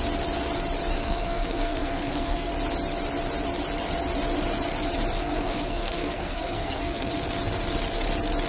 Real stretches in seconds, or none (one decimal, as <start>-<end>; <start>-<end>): 0.0-1.0; 2.5-5.2; 7.1-8.5